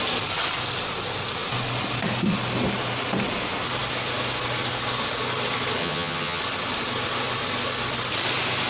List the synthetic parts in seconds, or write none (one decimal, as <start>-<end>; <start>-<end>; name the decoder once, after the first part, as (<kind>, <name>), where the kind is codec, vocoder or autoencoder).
5.8-6.4 (vocoder, HiFi-GAN)